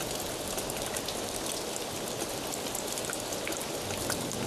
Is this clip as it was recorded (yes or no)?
yes